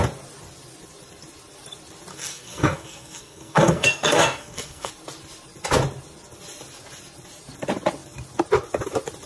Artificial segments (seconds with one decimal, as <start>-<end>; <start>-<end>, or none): 2.1-4.9